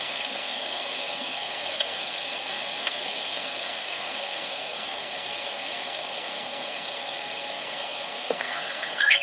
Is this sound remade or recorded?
remade